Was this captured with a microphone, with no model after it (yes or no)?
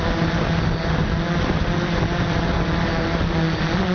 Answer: yes